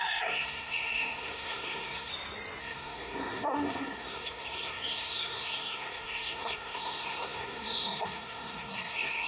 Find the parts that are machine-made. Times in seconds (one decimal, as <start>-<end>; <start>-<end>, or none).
0.0-2.1; 2.6-9.3